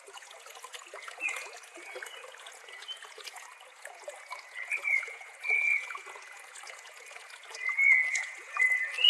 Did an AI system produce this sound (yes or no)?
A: yes